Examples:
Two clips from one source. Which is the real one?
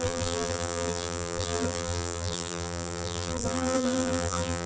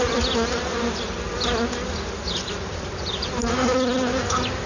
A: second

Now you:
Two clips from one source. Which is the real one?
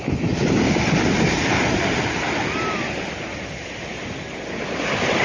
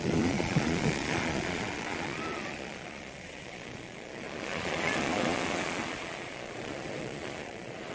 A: first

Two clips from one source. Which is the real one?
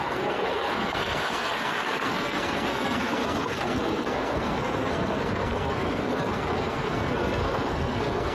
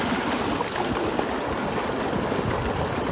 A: second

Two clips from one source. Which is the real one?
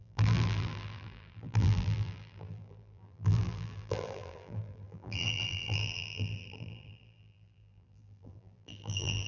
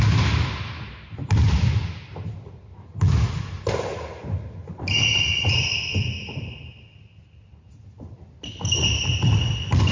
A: second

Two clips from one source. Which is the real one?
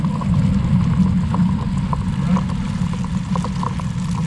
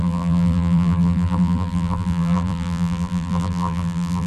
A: first